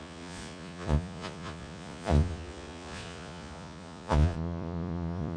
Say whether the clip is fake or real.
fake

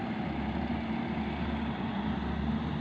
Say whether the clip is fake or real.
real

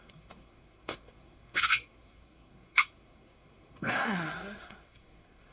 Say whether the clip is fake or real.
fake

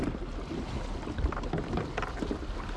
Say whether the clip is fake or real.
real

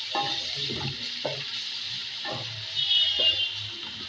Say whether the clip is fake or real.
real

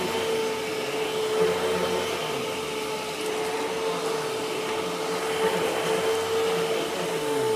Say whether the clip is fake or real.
real